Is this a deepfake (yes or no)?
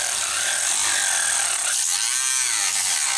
no